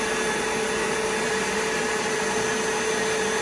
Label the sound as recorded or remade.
recorded